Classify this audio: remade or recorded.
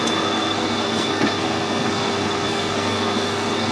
remade